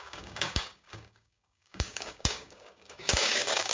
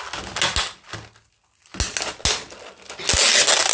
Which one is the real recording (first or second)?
second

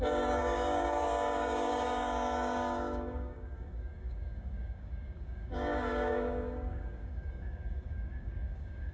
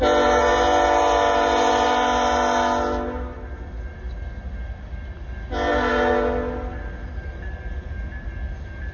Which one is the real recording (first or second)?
second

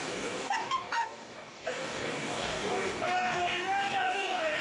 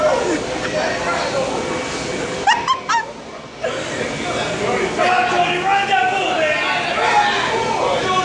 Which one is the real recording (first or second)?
second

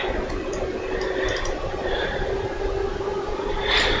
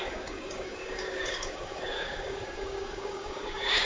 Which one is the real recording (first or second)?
first